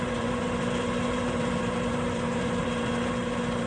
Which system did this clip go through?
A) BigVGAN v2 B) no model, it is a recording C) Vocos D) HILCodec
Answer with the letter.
A